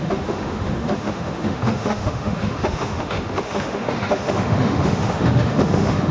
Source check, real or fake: fake